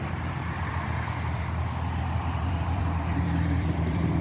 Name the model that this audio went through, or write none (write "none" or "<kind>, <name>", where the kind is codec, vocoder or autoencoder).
vocoder, BigVGAN v2